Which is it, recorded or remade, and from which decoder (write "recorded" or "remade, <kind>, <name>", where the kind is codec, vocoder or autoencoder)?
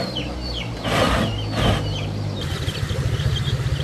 recorded